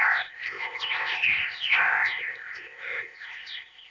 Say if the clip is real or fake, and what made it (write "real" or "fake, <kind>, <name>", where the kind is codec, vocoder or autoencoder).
fake, codec, ZipCodec